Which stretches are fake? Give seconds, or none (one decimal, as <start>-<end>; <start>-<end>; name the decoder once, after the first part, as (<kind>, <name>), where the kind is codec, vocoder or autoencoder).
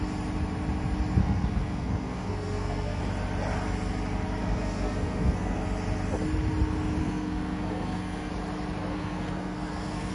1.2-3.0 (codec, SNAC); 4.4-5.6; 7.0-8.3; 8.9-10.1